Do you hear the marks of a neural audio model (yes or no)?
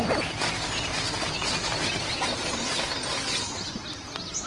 no